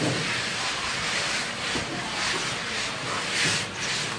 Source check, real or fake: real